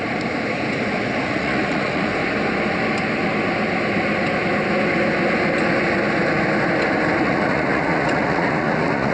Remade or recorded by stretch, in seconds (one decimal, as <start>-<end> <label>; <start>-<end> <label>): 0.0-1.2 recorded; 1.2-2.1 remade; 2.1-7.2 recorded; 7.2-9.1 remade